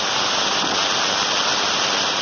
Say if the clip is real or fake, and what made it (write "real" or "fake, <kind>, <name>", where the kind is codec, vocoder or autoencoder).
real